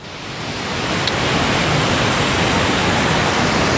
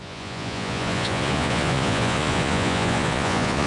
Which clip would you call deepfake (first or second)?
second